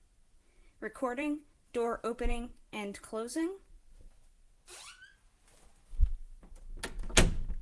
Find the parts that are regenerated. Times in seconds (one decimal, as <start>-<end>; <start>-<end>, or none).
0.0-3.7